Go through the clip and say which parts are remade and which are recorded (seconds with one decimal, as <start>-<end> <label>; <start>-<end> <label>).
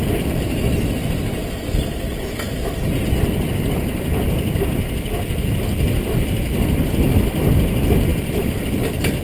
0.0-9.2 recorded